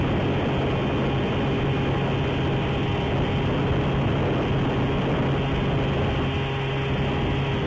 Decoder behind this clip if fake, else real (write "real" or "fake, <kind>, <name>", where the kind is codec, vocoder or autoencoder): real